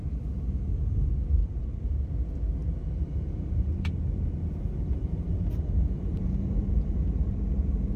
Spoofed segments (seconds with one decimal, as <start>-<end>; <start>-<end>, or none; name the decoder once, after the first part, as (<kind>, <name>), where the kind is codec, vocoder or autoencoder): 1.4-2.1 (vocoder, BigVGAN v2); 2.6-7.4

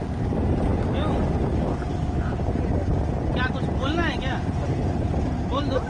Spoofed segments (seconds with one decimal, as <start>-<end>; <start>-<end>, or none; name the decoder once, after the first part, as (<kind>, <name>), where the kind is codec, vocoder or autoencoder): none

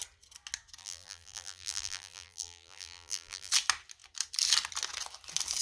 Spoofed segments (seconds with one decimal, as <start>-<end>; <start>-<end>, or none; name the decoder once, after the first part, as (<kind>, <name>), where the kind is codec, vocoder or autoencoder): 0.8-3.5 (vocoder, BigVGAN v2)

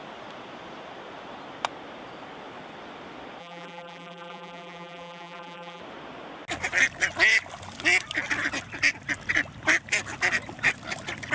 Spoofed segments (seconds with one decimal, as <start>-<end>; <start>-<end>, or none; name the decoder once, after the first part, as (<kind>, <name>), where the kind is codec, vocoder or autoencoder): 3.4-5.8 (vocoder, BigVGAN v2)

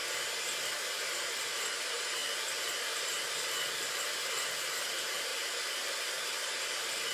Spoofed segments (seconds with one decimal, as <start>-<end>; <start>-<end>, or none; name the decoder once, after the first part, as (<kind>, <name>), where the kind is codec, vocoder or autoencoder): 1.0-2.2 (vocoder, BigVGAN v2); 4.2-5.3; 6.1-7.1

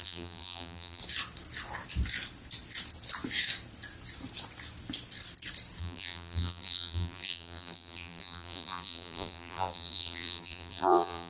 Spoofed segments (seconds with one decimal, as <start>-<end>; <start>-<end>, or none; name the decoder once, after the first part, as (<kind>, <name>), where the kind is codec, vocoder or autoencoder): 0.0-1.0 (vocoder, BigVGAN v2); 5.8-11.3